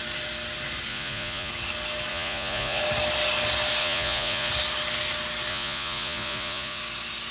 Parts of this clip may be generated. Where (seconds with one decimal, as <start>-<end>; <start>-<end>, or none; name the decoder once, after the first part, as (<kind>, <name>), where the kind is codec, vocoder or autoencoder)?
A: 0.9-1.5 (vocoder, Vocos); 2.1-2.8; 3.8-4.5; 5.5-6.8